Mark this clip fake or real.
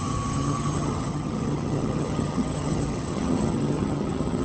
fake